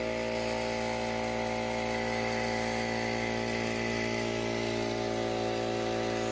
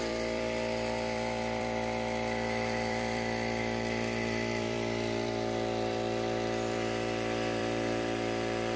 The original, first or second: first